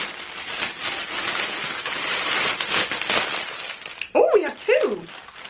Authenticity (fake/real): real